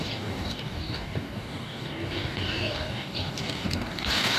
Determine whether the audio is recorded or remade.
remade